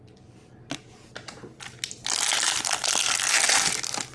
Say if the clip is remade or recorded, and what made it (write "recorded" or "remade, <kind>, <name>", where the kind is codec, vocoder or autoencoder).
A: recorded